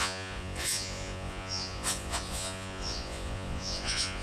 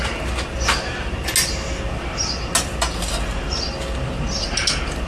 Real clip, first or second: second